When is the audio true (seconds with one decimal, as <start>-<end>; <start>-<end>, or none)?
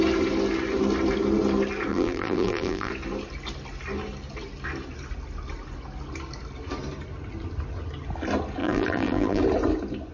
0.0-1.9; 2.9-8.6; 9.4-10.1